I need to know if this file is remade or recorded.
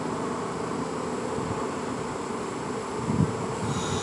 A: recorded